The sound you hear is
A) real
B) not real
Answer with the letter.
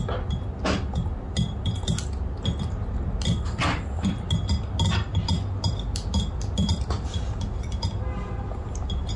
A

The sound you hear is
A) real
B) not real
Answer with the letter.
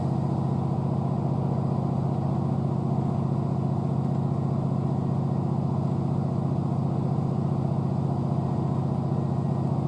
A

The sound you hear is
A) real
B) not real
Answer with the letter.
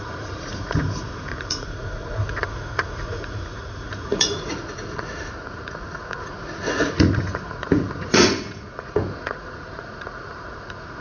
B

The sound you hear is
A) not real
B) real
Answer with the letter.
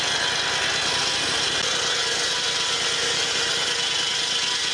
B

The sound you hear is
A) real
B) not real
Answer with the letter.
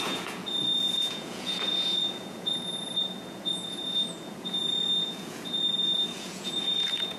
B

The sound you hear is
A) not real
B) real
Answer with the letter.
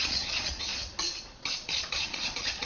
A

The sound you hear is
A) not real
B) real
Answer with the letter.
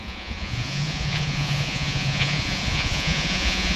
A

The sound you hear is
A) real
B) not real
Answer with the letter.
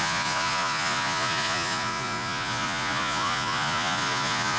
B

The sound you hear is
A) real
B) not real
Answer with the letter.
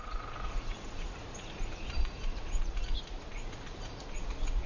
B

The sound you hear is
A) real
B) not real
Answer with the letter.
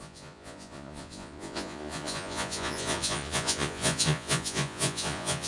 B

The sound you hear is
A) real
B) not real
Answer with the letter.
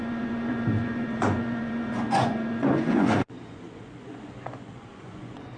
B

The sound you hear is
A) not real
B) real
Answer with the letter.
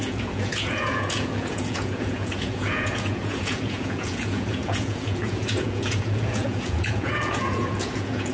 A